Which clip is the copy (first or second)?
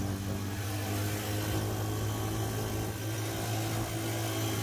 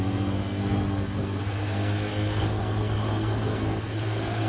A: second